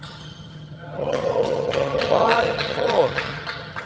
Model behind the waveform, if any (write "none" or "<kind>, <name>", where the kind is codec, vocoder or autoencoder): vocoder, HiFi-GAN